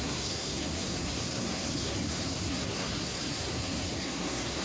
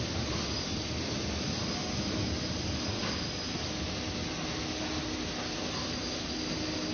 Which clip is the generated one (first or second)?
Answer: first